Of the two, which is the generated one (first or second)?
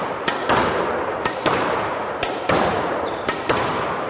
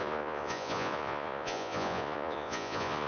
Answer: second